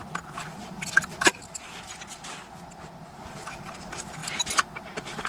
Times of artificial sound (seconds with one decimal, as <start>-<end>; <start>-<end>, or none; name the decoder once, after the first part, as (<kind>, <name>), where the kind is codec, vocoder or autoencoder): 0.0-1.3 (vocoder, BigVGAN v2); 3.2-5.3